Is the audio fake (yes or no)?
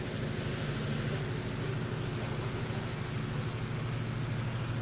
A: no